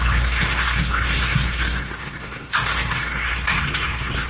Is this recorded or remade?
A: remade